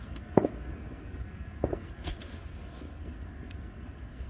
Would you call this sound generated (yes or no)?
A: yes